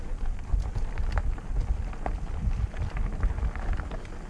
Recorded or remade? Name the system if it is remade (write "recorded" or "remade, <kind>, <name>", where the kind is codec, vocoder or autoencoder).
recorded